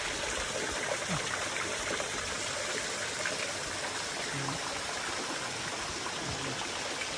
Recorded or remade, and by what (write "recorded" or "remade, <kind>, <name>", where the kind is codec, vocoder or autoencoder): remade, vocoder, BigVGAN v2